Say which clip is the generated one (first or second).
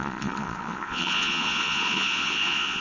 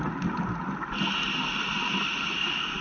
first